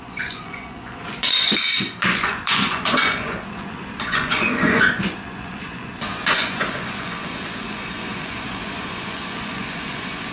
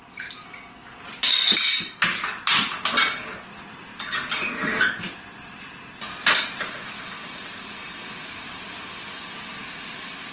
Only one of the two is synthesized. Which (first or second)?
first